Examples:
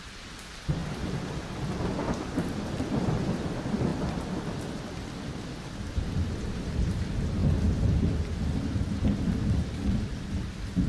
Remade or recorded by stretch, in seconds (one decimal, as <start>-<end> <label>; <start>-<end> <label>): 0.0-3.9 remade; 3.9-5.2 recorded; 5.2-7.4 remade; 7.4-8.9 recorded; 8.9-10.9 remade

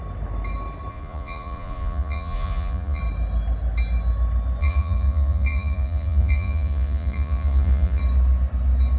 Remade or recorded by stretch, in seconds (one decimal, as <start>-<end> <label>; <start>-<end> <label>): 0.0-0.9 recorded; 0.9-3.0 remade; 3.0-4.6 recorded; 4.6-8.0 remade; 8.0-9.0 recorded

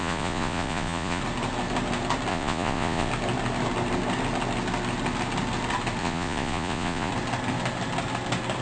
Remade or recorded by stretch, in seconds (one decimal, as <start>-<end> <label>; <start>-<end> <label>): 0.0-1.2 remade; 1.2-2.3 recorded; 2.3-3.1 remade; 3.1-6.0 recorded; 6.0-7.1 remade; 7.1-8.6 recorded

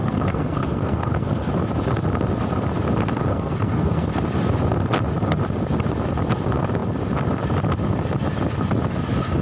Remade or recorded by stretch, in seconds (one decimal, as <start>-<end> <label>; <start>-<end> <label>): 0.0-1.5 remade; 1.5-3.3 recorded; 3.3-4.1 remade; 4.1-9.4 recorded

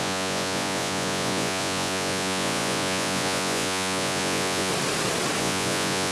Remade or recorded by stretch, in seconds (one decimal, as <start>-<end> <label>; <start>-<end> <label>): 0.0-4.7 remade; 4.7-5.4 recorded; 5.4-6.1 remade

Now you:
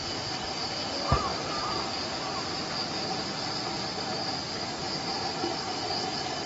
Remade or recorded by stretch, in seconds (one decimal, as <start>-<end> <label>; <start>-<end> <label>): 0.0-1.3 recorded; 1.3-3.2 remade; 3.2-4.8 recorded; 4.8-5.4 remade; 5.4-6.5 recorded

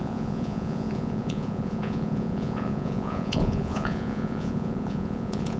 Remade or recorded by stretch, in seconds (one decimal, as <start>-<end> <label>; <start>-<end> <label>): 0.0-5.6 remade

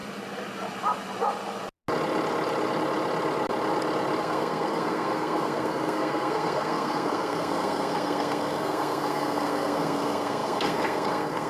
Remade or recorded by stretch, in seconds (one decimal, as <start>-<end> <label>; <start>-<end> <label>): 0.0-4.2 recorded; 4.2-11.5 remade